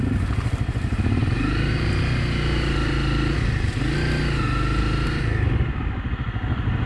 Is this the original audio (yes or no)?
yes